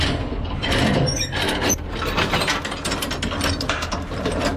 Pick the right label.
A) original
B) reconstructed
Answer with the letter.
B